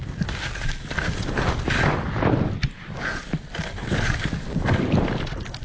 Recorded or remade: recorded